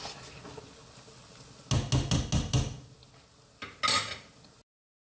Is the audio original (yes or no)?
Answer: yes